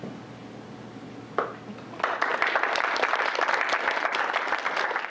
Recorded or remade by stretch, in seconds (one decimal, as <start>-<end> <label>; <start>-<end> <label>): 0.0-5.1 recorded